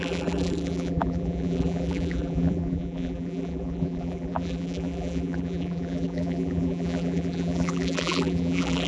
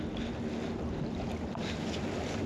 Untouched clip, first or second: second